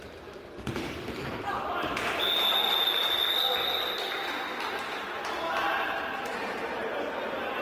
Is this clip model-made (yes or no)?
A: no